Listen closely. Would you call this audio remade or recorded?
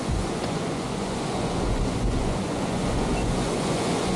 remade